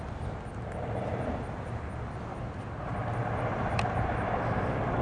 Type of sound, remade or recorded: recorded